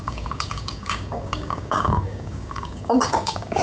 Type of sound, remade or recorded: remade